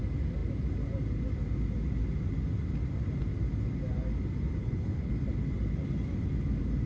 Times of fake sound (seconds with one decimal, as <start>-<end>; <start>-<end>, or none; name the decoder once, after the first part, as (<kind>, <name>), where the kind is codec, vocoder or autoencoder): 4.6-5.1 (codec, HILCodec)